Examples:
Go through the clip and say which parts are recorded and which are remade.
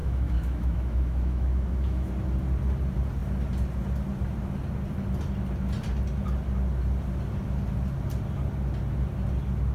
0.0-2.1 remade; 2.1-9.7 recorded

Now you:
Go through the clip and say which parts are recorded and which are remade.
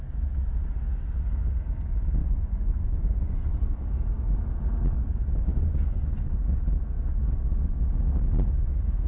0.0-2.2 recorded; 2.2-3.8 remade; 3.8-5.5 recorded; 5.5-6.0 remade; 6.0-9.1 recorded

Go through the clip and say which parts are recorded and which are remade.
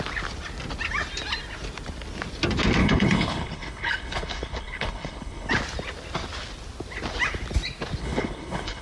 0.0-2.8 recorded; 2.8-5.5 remade; 5.5-8.0 recorded; 8.0-8.8 remade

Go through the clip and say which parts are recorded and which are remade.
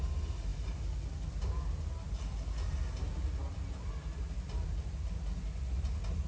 0.0-6.3 recorded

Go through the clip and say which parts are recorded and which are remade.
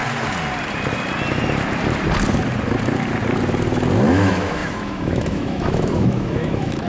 0.0-4.1 recorded; 4.1-6.9 remade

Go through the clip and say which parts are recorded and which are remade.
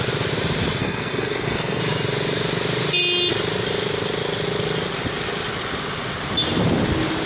0.0-0.8 recorded; 0.8-1.8 remade; 1.8-7.3 recorded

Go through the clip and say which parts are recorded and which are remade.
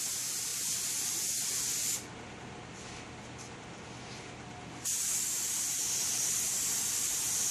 0.0-7.5 recorded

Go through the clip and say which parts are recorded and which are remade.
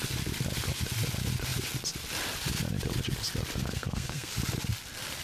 0.0-3.6 recorded; 3.6-4.3 remade; 4.3-5.2 recorded